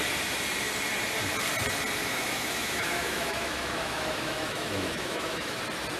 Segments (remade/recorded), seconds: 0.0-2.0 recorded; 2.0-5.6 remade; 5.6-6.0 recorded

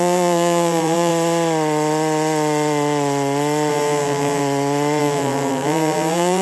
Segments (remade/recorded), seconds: 0.0-1.1 remade; 1.1-3.7 recorded; 3.7-4.4 remade; 4.4-5.0 recorded; 5.0-6.4 remade

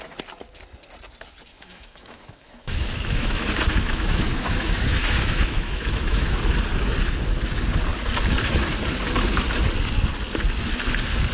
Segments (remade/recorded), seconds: 0.0-1.5 recorded; 1.5-6.4 remade; 6.4-11.3 recorded

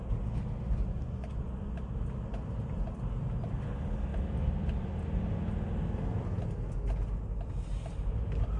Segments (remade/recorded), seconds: 0.0-0.9 recorded; 0.9-1.7 remade; 1.7-8.6 recorded

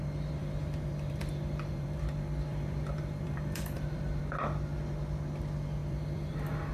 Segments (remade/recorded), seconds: 0.0-0.4 recorded; 0.4-2.0 remade; 2.0-2.5 recorded; 2.5-4.2 remade; 4.2-5.8 recorded; 5.8-6.7 remade

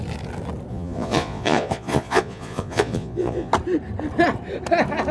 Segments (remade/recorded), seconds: 0.0-0.7 recorded; 0.7-3.5 remade; 3.5-5.1 recorded

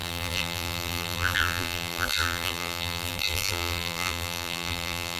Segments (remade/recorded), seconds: 0.0-5.2 remade

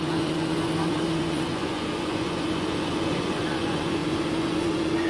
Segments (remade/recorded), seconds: 0.0-5.1 remade